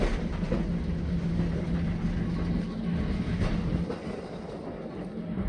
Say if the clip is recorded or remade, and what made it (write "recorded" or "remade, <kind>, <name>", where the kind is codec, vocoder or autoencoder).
recorded